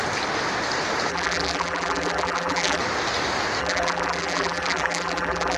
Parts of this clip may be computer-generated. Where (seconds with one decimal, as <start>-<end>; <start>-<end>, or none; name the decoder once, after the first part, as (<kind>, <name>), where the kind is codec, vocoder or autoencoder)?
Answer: 1.1-2.8 (vocoder, BigVGAN v2); 3.6-5.6